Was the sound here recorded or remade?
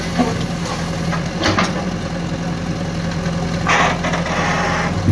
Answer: recorded